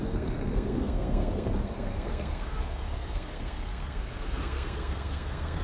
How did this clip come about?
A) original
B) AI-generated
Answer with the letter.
B